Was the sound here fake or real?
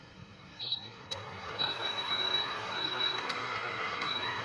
fake